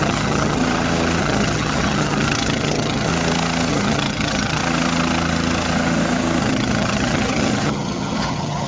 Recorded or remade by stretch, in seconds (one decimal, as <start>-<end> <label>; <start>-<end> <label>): 0.0-0.6 remade; 0.6-1.2 recorded; 1.2-3.1 remade; 3.1-3.7 recorded; 3.7-4.6 remade; 4.6-6.4 recorded; 6.4-8.7 remade